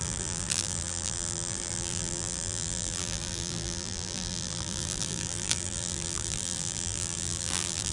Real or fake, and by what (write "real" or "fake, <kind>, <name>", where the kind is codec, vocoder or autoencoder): fake, vocoder, BigVGAN v2